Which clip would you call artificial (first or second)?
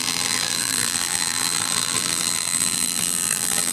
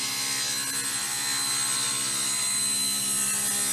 first